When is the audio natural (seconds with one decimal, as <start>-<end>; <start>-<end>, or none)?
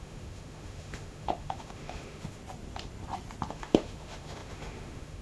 2.4-3.5